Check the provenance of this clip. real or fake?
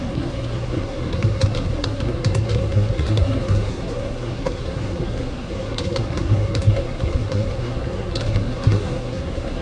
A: fake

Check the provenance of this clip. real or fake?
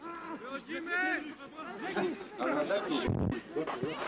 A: real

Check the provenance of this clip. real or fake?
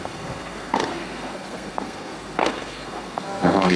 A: fake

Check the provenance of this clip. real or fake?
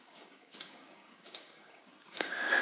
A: fake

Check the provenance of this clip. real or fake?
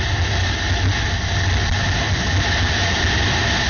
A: real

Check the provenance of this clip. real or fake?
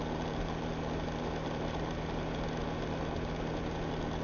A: real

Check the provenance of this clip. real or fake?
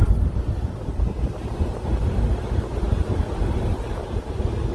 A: real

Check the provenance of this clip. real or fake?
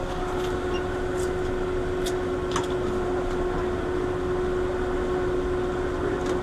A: real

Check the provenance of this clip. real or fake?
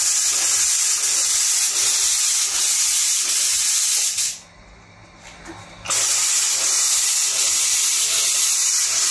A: real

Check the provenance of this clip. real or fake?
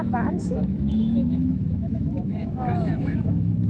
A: fake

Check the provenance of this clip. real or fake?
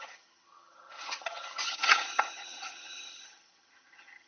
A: fake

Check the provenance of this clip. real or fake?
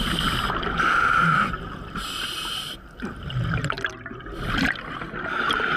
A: real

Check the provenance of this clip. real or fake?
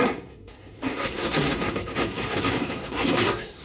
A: fake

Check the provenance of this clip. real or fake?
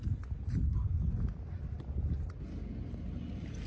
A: real